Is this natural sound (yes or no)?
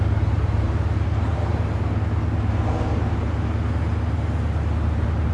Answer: yes